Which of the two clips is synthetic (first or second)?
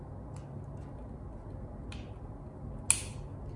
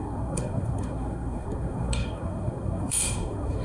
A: second